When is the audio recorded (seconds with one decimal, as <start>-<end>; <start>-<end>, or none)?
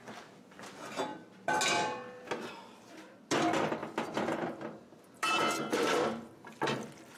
0.0-3.8; 6.7-7.2